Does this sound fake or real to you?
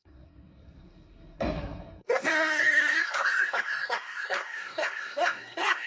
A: fake